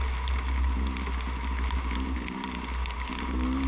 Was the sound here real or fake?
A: real